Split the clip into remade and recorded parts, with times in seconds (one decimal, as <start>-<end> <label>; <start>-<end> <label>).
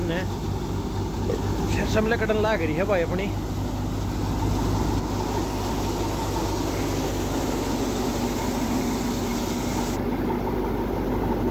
0.0-11.5 recorded